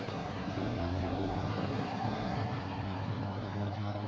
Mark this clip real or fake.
fake